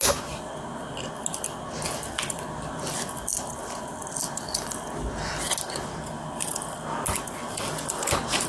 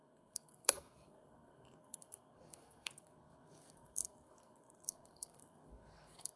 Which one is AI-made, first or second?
second